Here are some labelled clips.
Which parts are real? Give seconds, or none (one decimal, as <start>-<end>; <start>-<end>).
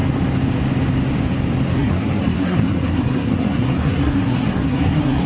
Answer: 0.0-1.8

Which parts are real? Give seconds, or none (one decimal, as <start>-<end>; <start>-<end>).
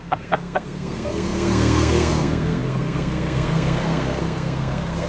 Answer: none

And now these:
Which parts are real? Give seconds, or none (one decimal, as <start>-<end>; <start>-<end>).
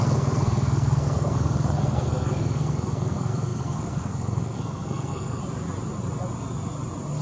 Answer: 5.4-7.2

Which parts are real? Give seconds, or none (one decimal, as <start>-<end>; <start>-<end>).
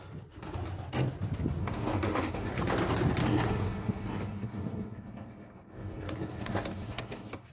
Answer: 0.0-1.6; 2.5-3.2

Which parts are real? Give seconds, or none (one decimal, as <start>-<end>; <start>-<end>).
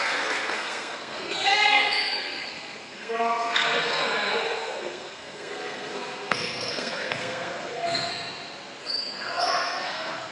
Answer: 8.1-8.8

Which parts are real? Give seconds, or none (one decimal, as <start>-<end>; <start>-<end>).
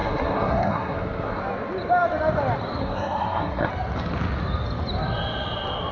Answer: 1.4-2.8; 3.7-5.9